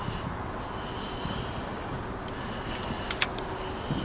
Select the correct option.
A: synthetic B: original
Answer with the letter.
B